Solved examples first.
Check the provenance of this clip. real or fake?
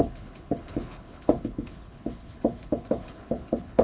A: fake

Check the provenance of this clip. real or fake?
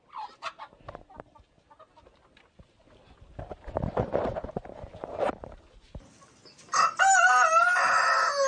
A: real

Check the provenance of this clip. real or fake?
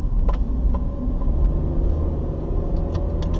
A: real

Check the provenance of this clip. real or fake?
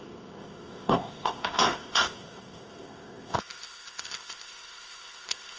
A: fake